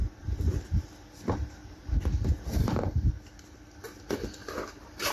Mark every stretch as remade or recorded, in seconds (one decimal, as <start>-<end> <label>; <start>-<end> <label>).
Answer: 0.0-3.1 remade; 3.1-5.1 recorded